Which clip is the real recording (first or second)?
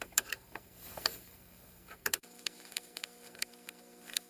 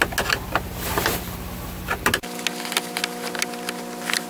second